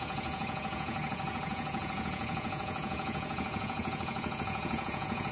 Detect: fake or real fake